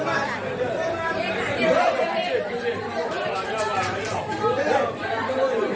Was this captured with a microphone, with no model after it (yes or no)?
no